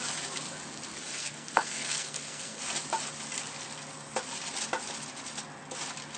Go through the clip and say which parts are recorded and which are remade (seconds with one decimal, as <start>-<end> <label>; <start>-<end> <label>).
0.0-0.9 recorded; 0.9-2.6 remade; 2.6-6.2 recorded